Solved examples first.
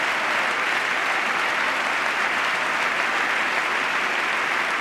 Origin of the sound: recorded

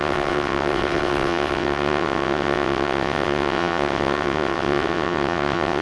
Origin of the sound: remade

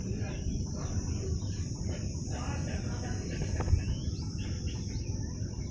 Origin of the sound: recorded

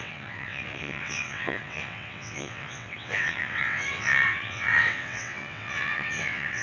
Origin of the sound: remade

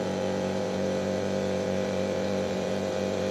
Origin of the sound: remade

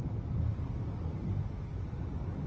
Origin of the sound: recorded